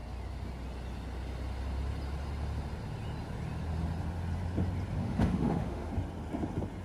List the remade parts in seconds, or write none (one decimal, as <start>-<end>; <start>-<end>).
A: 5.0-5.9